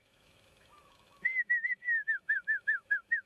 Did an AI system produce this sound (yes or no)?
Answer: yes